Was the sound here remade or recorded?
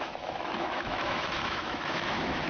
remade